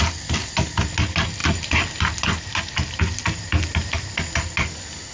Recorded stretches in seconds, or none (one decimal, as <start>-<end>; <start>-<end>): 0.0-5.1